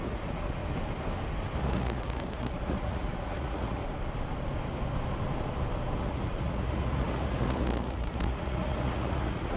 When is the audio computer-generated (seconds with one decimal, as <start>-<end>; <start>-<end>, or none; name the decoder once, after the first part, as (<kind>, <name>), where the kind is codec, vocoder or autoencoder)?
0.0-0.6 (vocoder, Vocos); 1.6-3.8; 6.0-9.6